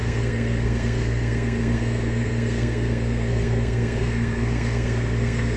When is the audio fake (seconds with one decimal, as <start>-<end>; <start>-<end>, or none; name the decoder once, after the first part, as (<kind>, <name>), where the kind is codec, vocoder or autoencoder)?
0.0-5.6 (codec, SNAC)